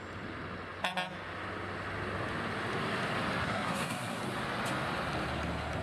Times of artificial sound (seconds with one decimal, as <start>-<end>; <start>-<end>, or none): 3.4-4.2